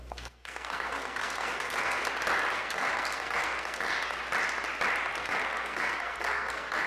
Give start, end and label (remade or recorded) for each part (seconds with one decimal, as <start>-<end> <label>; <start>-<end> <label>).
0.0-2.0 remade; 2.0-2.5 recorded; 2.5-4.2 remade; 4.2-5.2 recorded; 5.2-6.9 remade